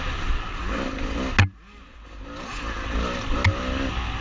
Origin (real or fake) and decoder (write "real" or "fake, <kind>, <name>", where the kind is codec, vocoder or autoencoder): real